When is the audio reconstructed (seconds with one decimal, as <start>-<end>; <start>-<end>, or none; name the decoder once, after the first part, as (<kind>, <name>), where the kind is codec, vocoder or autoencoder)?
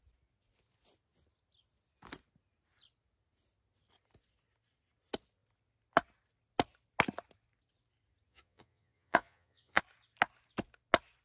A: 8.3-9.8 (vocoder, Vocos)